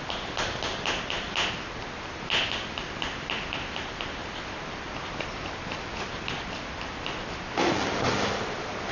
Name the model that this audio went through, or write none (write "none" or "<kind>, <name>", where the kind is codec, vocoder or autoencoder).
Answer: none